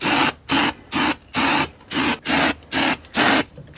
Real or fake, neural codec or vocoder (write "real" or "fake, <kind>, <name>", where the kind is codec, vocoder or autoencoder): real